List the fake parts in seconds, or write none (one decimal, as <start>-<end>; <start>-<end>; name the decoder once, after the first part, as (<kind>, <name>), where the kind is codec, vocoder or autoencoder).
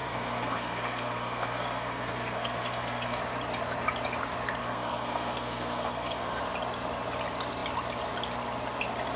0.0-3.2 (codec, SNAC); 4.6-6.4